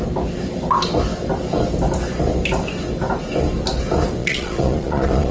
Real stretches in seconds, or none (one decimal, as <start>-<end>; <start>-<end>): 0.0-4.2